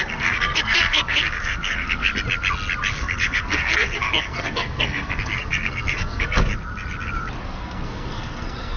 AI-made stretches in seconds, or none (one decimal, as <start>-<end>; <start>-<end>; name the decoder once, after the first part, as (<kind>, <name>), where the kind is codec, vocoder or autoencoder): 0.0-2.1 (codec, SNAC); 2.9-6.7; 7.4-8.8